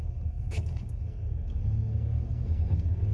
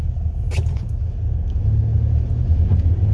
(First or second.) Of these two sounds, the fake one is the first